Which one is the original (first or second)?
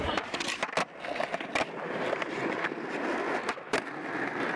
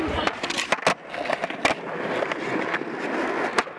second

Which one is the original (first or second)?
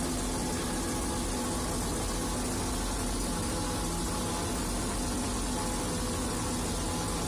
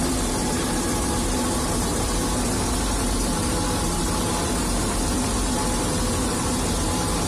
first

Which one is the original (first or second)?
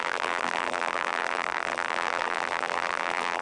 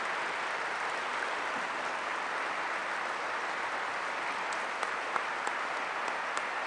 second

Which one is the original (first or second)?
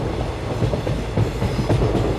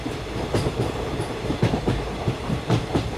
first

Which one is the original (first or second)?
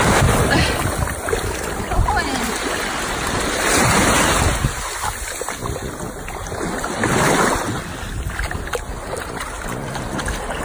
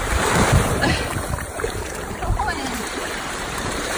first